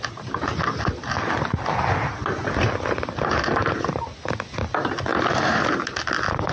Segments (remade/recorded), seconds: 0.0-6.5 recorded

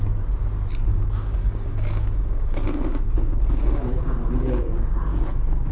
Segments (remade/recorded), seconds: 0.0-0.9 recorded; 0.9-4.3 remade; 4.3-5.7 recorded